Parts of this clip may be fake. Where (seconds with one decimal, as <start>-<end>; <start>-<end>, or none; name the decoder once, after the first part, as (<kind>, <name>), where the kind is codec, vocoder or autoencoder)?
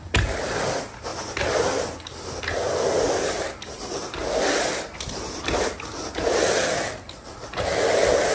none